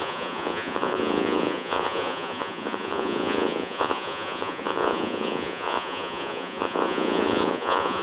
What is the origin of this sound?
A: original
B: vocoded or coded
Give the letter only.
B